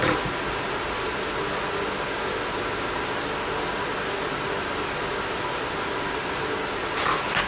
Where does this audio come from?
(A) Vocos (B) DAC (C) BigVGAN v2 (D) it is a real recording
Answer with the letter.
D